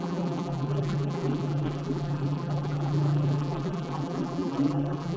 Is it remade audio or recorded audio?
remade